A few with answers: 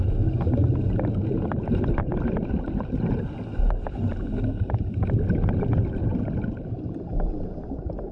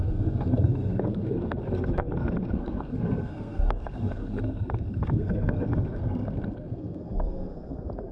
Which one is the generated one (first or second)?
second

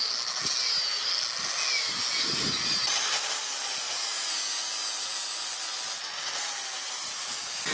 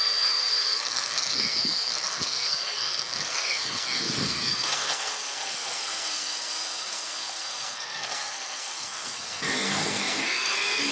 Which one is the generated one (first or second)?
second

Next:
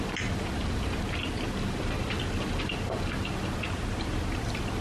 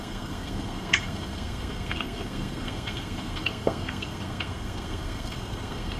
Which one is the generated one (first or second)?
second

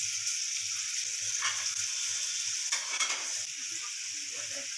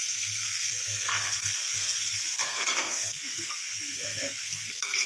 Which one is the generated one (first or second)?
second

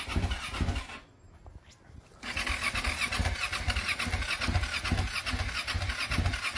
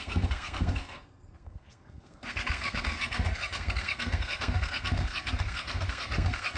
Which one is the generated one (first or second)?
second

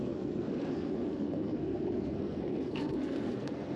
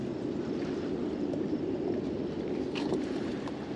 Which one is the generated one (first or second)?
first